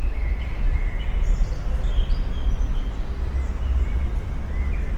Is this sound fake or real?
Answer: real